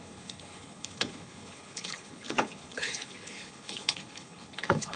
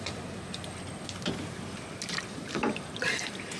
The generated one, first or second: first